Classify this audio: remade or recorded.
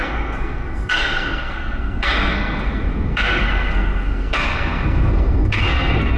remade